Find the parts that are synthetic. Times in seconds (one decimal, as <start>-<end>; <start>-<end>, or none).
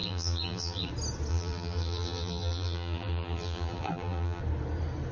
0.0-0.9; 1.3-4.4